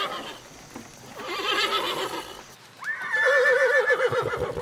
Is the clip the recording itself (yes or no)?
yes